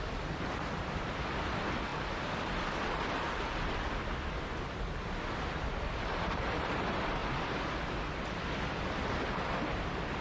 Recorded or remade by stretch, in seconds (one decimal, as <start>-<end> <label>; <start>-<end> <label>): 0.0-1.4 remade; 1.4-1.9 recorded; 1.9-4.4 remade; 4.4-10.2 recorded